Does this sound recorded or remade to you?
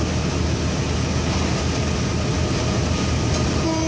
recorded